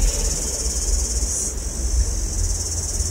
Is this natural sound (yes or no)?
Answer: yes